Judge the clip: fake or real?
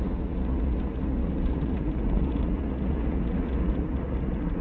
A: fake